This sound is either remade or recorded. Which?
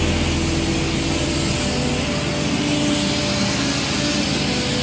recorded